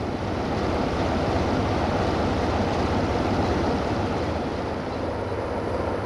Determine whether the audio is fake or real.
real